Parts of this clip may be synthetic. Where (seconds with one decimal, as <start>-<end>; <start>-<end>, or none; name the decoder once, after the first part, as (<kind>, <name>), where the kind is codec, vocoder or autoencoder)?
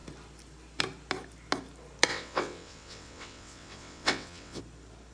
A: 2.1-4.6 (vocoder, WaveNeXt)